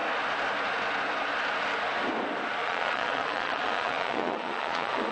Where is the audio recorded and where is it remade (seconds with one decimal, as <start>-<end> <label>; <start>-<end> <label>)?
0.0-2.6 recorded; 2.6-5.1 remade